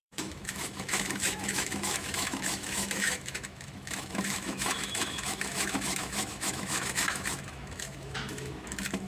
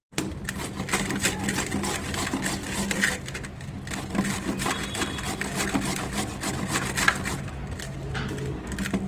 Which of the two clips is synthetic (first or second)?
first